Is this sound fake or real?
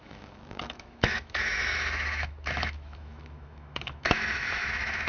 fake